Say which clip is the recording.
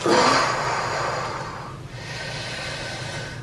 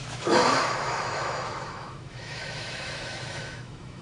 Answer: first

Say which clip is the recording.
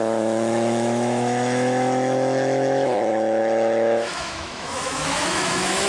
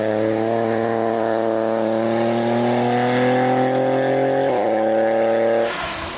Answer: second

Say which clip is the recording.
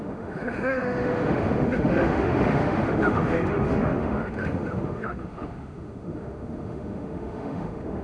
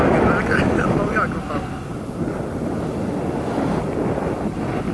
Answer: second